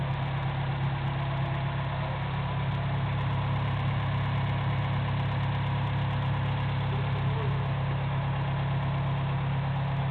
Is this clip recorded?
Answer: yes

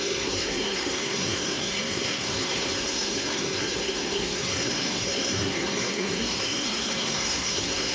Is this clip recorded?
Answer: no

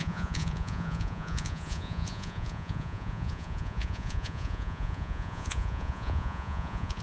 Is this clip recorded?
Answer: no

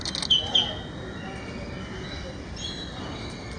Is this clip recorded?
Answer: yes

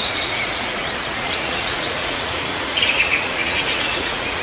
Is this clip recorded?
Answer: no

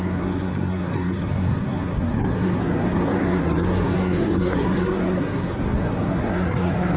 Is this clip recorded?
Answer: no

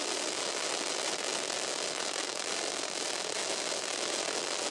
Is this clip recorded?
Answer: yes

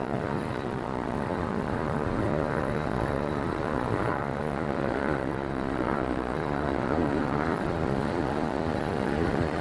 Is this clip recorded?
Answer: no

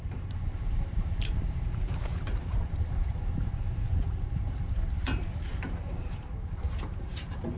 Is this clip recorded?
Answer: no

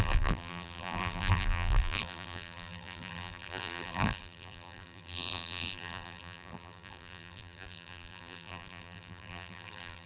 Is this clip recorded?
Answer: no